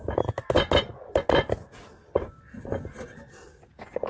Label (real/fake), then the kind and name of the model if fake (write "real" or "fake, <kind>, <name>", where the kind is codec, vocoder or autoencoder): real